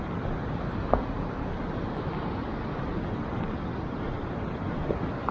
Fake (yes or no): no